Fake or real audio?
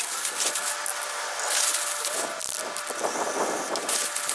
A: real